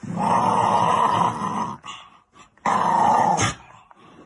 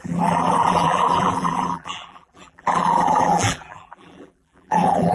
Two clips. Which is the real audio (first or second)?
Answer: first